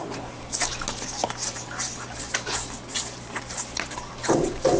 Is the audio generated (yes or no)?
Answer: no